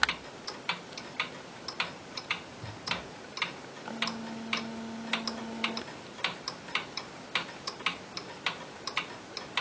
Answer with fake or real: real